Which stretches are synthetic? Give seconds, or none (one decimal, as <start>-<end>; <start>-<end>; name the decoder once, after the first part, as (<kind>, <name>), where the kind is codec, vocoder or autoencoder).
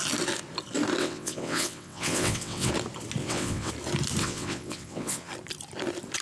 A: 1.0-2.7 (vocoder, WaveNeXt); 3.2-3.7; 4.2-5.3